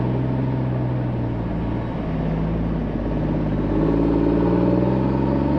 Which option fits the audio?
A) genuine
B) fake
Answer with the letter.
A